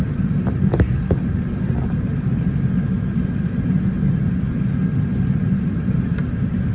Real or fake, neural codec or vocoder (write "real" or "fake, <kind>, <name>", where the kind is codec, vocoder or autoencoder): real